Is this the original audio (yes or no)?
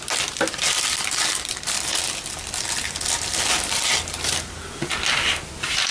yes